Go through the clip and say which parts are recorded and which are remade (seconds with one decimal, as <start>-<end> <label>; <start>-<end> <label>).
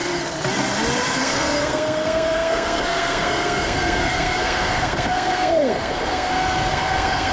0.0-1.2 recorded; 1.2-7.3 remade